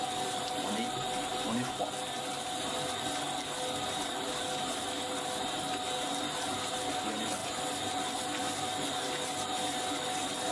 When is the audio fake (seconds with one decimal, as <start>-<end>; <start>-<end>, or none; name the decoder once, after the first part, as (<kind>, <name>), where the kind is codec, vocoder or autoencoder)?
none